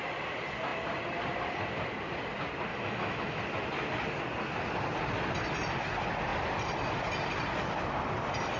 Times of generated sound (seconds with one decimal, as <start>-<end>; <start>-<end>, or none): 2.7-3.4